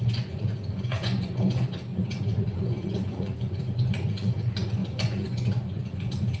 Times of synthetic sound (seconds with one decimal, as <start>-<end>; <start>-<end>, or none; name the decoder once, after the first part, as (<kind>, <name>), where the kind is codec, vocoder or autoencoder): 0.0-6.4 (vocoder, Vocos)